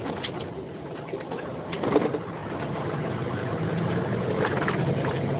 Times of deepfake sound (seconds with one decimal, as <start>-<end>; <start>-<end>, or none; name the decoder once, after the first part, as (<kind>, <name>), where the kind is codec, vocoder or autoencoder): none